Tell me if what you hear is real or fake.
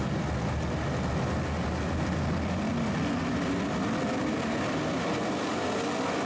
real